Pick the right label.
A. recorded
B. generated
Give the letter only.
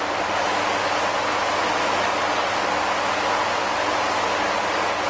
A